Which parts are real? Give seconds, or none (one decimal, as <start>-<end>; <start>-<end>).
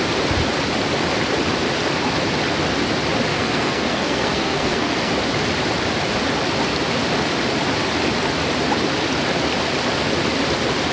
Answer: 0.0-3.3; 5.1-10.9